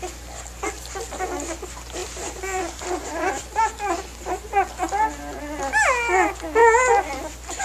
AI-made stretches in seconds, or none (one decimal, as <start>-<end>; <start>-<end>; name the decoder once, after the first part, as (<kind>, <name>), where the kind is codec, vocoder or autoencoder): 2.0-4.0 (vocoder, BigVGAN v2)